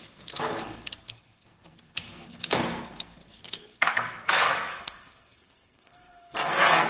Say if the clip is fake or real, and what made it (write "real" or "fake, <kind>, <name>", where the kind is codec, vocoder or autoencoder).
fake, codec, SNAC